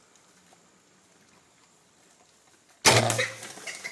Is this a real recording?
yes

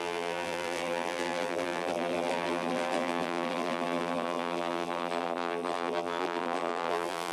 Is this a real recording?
no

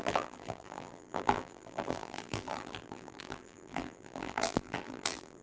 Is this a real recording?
no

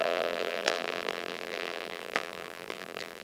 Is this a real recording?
no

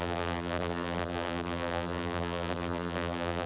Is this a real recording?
no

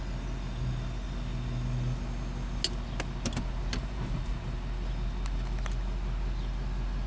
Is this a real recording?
yes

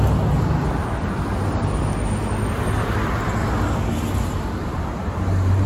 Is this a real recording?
yes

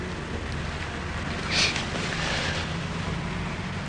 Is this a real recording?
yes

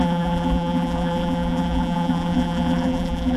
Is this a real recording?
no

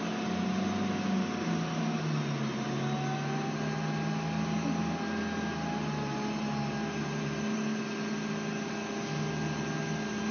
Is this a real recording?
yes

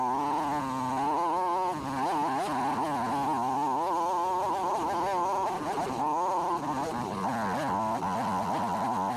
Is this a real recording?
yes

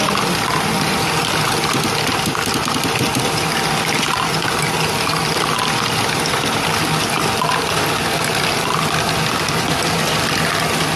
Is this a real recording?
yes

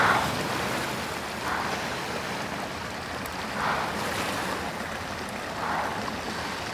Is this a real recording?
yes